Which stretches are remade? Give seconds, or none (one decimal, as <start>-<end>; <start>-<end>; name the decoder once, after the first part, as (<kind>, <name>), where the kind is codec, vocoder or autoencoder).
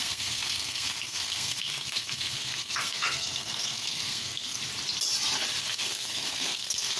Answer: 0.0-4.6 (codec, SNAC); 5.6-7.0